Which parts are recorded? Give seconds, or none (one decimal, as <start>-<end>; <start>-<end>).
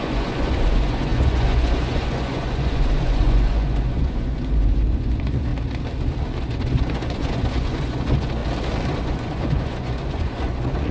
5.5-6.4; 8.4-9.0